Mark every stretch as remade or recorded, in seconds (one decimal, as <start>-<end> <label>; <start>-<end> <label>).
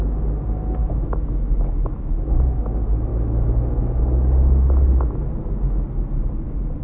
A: 0.0-0.8 recorded; 0.8-2.4 remade; 2.4-3.1 recorded; 3.1-4.0 remade; 4.0-6.8 recorded